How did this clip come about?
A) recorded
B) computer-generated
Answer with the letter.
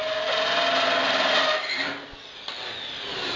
A